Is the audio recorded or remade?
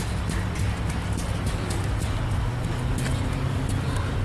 recorded